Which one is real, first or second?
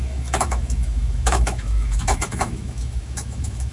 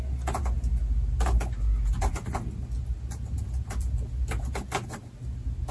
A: second